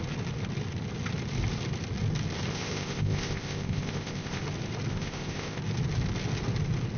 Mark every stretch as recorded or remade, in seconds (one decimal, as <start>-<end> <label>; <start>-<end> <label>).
0.0-2.5 recorded; 2.5-4.4 remade; 4.4-4.9 recorded; 4.9-5.6 remade; 5.6-7.0 recorded